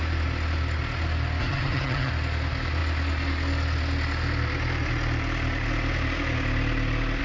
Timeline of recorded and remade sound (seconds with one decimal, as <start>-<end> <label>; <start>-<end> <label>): 0.0-1.4 recorded; 1.4-2.1 remade; 2.1-7.2 recorded